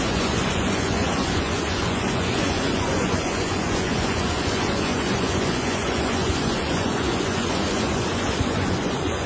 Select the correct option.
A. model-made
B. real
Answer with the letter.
A